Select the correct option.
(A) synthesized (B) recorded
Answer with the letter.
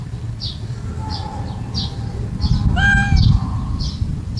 B